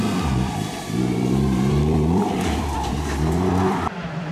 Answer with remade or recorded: remade